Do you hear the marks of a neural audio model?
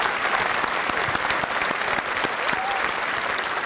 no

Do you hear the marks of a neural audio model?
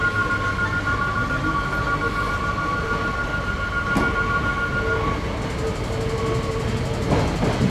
no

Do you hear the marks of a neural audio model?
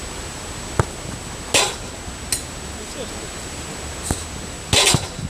no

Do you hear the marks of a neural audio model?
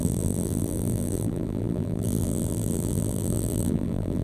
yes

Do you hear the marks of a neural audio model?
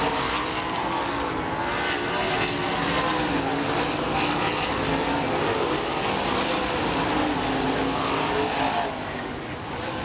no